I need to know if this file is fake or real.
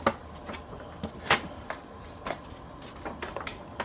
real